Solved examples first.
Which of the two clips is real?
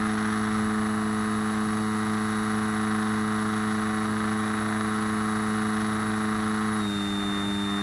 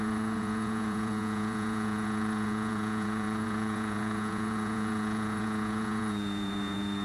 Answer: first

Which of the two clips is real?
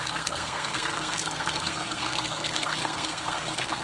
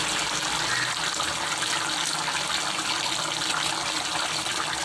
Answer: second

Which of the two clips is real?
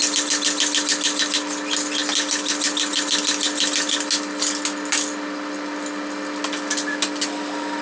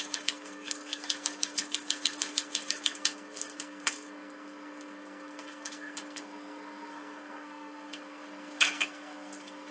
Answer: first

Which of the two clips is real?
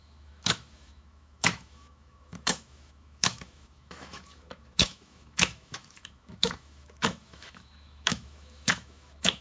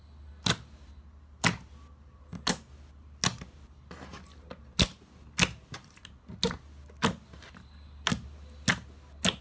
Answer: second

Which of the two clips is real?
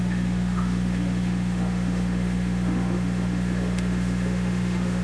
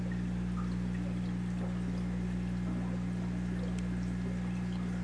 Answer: second